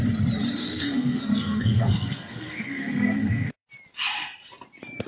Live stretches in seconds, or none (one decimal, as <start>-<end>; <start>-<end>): 0.0-0.6; 3.7-5.1